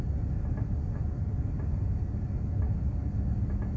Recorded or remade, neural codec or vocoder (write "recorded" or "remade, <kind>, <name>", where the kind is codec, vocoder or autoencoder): recorded